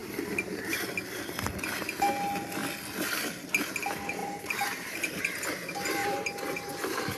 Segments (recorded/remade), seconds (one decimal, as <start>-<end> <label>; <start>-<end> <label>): 0.0-0.8 remade; 0.8-4.2 recorded; 4.2-5.2 remade; 5.2-6.0 recorded; 6.0-6.7 remade; 6.7-7.2 recorded

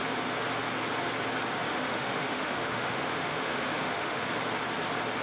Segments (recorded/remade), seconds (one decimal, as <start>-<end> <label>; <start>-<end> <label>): 0.0-1.7 recorded; 1.7-4.3 remade; 4.3-5.2 recorded

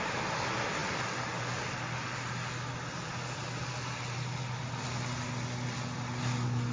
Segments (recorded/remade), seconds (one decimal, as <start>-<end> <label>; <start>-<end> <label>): 0.0-6.7 recorded

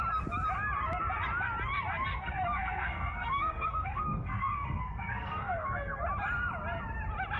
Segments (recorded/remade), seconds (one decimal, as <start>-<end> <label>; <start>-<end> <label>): 0.0-2.1 recorded; 2.1-6.0 remade; 6.0-7.4 recorded